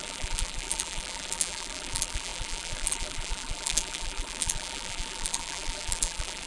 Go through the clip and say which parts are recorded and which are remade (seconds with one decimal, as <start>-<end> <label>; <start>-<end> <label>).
0.0-6.5 remade